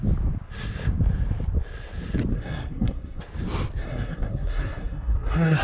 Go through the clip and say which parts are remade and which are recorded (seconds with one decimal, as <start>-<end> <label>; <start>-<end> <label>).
0.0-2.3 recorded; 2.3-3.2 remade; 3.2-3.8 recorded; 3.8-5.6 remade